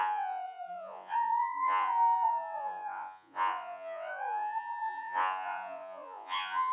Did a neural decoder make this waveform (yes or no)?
yes